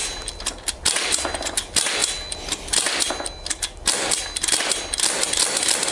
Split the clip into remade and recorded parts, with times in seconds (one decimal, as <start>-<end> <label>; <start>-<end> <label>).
0.0-5.9 recorded